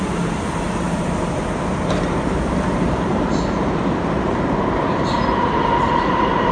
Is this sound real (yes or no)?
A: no